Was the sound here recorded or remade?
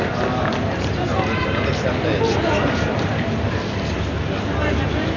remade